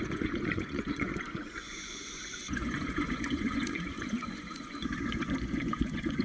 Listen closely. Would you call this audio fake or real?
fake